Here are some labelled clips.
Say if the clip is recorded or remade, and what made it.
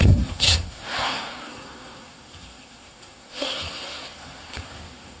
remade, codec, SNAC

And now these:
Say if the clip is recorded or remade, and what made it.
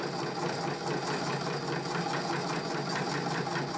recorded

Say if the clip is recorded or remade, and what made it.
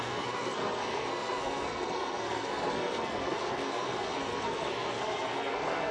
remade, codec, SNAC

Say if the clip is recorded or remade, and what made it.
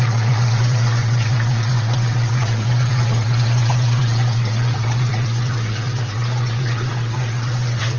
remade, vocoder, WaveNeXt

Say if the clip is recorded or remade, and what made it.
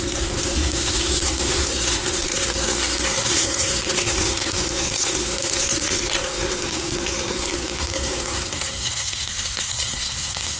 remade, codec, SNAC